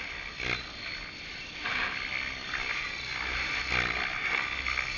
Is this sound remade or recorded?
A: recorded